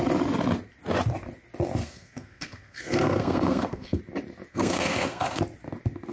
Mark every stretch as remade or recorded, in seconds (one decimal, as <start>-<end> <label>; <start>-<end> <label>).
0.0-1.8 recorded; 1.8-4.0 remade; 4.0-4.5 recorded; 4.5-5.4 remade; 5.4-6.1 recorded

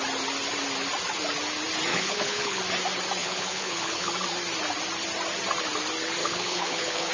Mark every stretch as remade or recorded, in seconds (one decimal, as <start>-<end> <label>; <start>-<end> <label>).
0.0-1.9 recorded; 1.9-2.6 remade; 2.6-3.2 recorded; 3.2-4.1 remade; 4.1-6.2 recorded; 6.2-7.1 remade

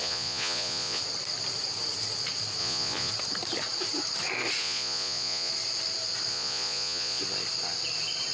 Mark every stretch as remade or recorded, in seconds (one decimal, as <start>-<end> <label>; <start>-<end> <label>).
0.0-1.0 remade; 1.0-2.6 recorded; 2.6-3.1 remade; 3.1-4.6 recorded; 4.6-5.5 remade; 5.5-6.3 recorded; 6.3-7.2 remade; 7.2-8.3 recorded

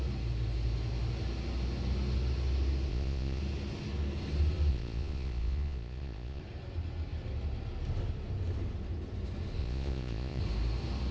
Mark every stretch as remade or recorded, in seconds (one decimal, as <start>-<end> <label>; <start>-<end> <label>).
0.0-2.9 recorded; 2.9-3.4 remade; 3.4-4.7 recorded; 4.7-6.4 remade; 6.4-9.6 recorded; 9.6-10.4 remade; 10.4-11.1 recorded

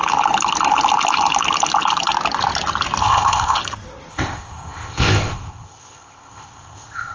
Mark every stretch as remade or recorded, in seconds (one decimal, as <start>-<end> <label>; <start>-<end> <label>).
0.0-3.0 recorded; 3.0-3.6 remade; 3.6-4.1 recorded; 4.1-7.1 remade